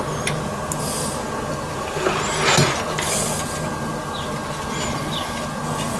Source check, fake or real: real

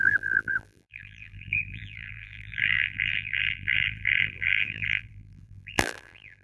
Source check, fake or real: fake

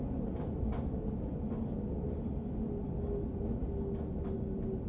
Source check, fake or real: real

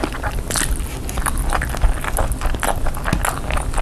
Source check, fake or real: real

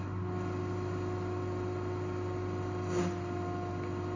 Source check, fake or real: real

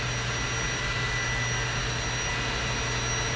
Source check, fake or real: real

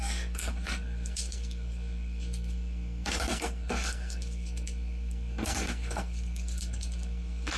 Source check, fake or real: fake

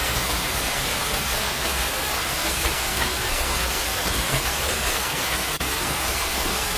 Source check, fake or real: fake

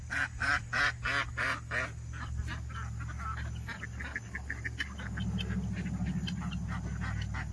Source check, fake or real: real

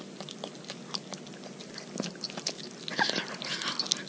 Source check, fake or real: real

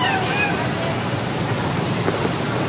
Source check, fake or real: real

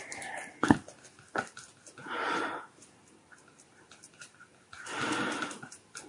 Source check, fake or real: real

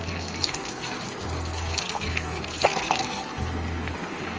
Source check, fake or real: fake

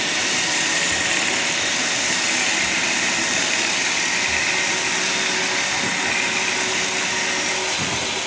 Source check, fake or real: real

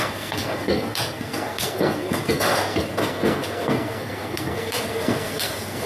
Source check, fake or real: fake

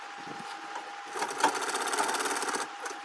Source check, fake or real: real